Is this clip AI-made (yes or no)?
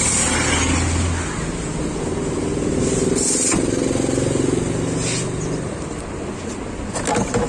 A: no